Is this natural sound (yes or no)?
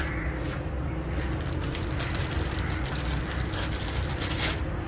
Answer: yes